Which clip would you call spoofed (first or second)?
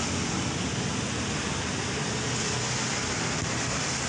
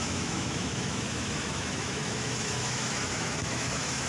second